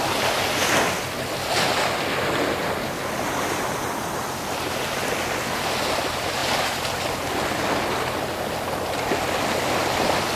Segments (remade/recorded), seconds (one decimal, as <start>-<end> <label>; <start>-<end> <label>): 0.0-10.4 recorded